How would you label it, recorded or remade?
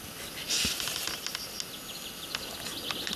recorded